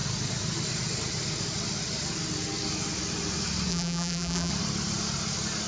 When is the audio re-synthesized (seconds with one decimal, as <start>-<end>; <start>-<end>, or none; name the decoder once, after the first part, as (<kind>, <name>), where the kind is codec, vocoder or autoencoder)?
3.7-4.5 (vocoder, BigVGAN v2)